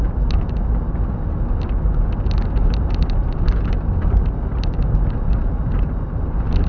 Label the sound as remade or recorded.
recorded